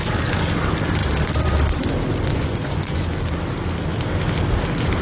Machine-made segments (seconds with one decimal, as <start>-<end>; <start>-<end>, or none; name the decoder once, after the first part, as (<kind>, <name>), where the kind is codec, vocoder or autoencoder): 2.3-3.1 (vocoder, Vocos)